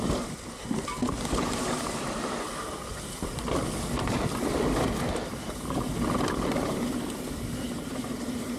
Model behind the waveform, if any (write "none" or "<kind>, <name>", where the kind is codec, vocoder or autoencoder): none